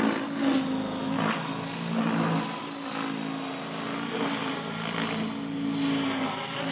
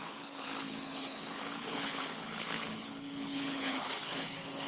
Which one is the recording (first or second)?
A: first